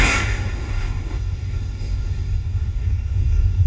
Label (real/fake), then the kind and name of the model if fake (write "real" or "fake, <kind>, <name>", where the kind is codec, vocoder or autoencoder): fake, codec, DAC